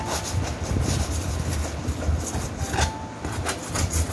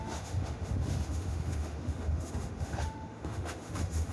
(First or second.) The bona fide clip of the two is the first